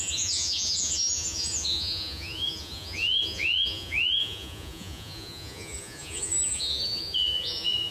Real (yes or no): no